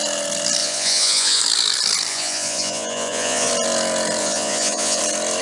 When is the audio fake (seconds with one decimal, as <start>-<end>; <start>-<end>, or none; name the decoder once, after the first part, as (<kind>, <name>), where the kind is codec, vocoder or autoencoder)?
0.6-1.4 (vocoder, Vocos); 2.1-3.5; 4.2-5.0